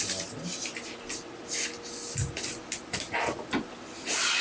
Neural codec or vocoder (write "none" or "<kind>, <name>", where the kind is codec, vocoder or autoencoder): none